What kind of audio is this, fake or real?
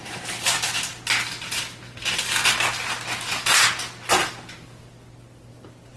real